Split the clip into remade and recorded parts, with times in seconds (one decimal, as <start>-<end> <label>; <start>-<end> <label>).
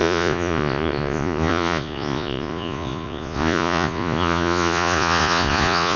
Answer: 0.0-6.0 remade